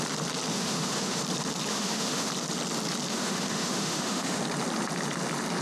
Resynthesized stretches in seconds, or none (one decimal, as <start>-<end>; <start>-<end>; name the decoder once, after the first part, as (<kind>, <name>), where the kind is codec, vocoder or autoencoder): 0.5-1.2 (autoencoder, DAC-VAE); 1.7-2.3; 3.1-4.4